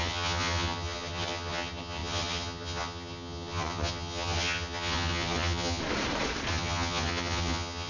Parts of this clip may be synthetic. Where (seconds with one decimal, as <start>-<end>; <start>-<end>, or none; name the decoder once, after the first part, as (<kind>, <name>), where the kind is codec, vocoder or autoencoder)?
0.0-5.8 (vocoder, HiFi-GAN); 6.5-7.9